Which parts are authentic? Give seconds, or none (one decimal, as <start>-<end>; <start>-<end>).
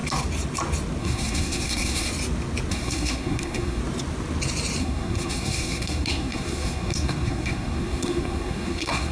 0.0-1.0; 2.1-2.7; 3.8-4.8